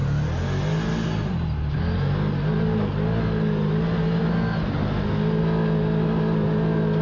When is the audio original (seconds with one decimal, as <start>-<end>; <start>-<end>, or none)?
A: 0.0-7.0